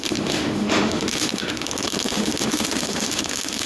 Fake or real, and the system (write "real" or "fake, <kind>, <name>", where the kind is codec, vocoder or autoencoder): fake, autoencoder, DAC-VAE